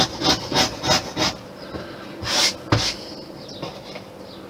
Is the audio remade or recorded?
recorded